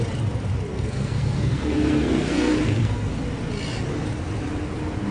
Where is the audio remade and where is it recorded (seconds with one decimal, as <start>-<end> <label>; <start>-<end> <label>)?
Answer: 0.0-0.7 recorded; 0.7-3.1 remade; 3.1-5.1 recorded